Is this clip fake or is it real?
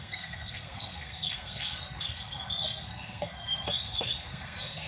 fake